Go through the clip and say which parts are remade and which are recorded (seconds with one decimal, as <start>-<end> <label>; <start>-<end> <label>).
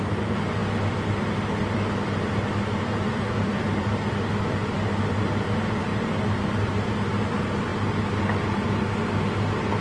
0.0-7.7 recorded; 7.7-9.0 remade; 9.0-9.8 recorded